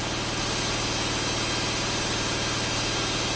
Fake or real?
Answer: real